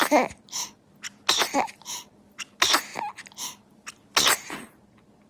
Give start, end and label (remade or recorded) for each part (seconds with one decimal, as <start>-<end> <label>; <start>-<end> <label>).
0.0-5.3 recorded